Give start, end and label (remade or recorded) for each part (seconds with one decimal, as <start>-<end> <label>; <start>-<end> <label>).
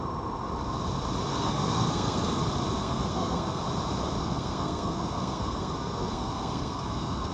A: 0.0-1.3 recorded; 1.3-2.4 remade; 2.4-2.8 recorded; 2.8-3.6 remade; 3.6-4.2 recorded; 4.2-7.3 remade